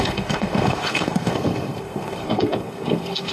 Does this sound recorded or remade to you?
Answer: remade